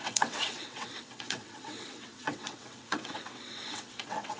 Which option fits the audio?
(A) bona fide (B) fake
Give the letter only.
B